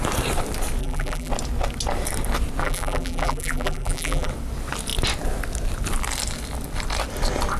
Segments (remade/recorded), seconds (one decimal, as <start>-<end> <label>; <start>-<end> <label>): 0.0-0.8 recorded; 0.8-1.3 remade; 1.3-2.6 recorded; 2.6-4.3 remade; 4.3-7.6 recorded